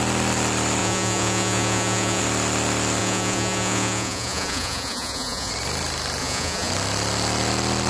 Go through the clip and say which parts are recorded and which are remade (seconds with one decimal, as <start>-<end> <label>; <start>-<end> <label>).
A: 0.0-0.8 recorded; 0.8-2.2 remade; 2.2-3.0 recorded; 3.0-5.5 remade; 5.5-6.2 recorded; 6.2-6.7 remade; 6.7-7.9 recorded